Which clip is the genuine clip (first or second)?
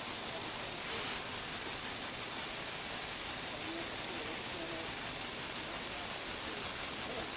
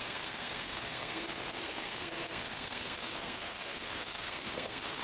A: first